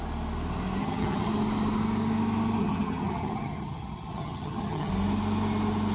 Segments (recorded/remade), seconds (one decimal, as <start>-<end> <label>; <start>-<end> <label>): 0.0-0.8 recorded; 0.8-1.3 remade; 1.3-2.6 recorded; 2.6-4.9 remade; 4.9-5.9 recorded